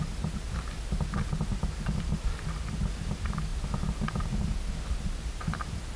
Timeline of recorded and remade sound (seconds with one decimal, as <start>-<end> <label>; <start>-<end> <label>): 0.0-6.0 recorded